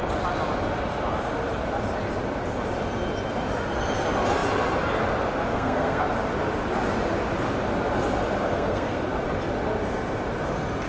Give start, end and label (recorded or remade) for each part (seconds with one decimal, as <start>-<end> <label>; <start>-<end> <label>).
0.0-5.5 recorded; 5.5-6.0 remade; 6.0-8.5 recorded; 8.5-9.0 remade; 9.0-10.9 recorded